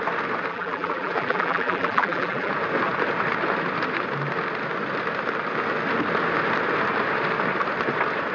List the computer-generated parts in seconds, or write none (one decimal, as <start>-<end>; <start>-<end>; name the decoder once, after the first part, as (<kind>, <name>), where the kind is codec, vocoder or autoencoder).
0.5-2.5 (vocoder, BigVGAN v2)